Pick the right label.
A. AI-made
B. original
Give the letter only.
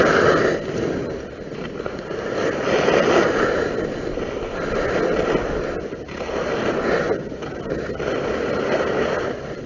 B